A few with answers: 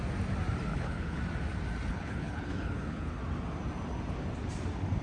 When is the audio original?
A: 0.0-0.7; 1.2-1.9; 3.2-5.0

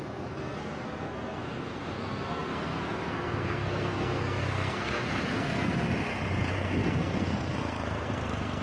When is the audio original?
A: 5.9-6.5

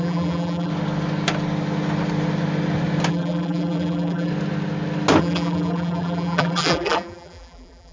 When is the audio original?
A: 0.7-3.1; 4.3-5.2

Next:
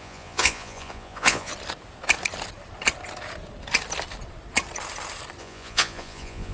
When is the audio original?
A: 1.5-5.4

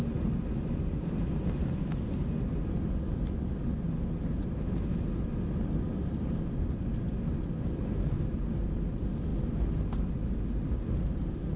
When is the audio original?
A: 0.0-11.6

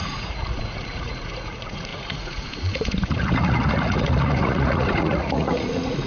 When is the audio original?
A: none